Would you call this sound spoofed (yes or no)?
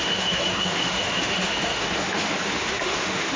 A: yes